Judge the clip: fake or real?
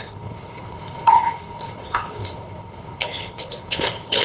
fake